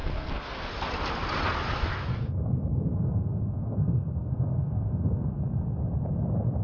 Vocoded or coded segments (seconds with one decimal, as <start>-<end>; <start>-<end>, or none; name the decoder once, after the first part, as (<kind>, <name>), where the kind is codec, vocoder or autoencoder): 0.0-0.7 (codec, SNAC); 2.1-5.4